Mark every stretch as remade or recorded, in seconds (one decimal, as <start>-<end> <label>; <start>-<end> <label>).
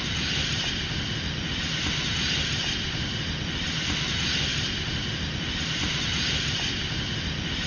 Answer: 0.0-7.7 recorded